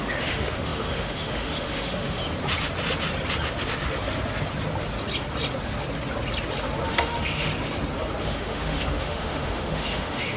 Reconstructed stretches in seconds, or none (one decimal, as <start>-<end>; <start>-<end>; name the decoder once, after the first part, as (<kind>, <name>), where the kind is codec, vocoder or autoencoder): 0.0-2.2 (autoencoder, DAC-VAE); 6.9-7.5; 8.2-10.4